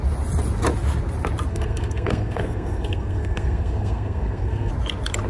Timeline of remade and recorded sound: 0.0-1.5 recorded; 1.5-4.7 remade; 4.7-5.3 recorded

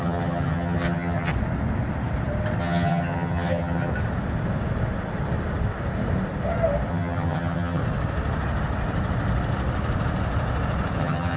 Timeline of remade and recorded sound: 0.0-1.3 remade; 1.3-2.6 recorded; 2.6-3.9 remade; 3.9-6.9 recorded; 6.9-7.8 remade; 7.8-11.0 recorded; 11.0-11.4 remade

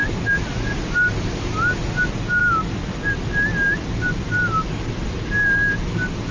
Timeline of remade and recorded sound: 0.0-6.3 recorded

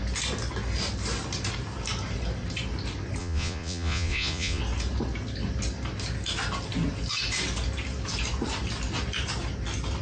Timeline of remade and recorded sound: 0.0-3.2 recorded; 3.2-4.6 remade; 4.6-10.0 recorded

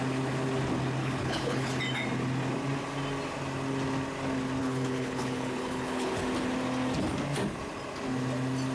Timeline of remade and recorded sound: 0.0-1.0 recorded; 1.0-1.7 remade; 1.7-4.6 recorded; 4.6-6.1 remade; 6.1-8.7 recorded

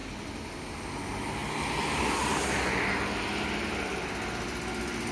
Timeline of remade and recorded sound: 0.0-5.1 recorded

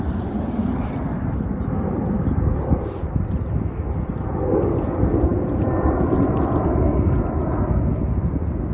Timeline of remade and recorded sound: 0.0-1.5 recorded; 1.5-4.5 remade; 4.5-5.3 recorded; 5.3-7.7 remade; 7.7-8.7 recorded

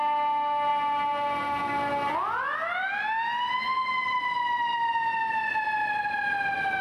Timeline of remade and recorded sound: 0.0-6.8 recorded